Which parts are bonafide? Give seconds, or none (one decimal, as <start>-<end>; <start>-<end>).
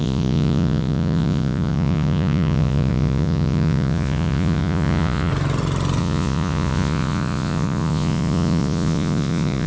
5.3-6.0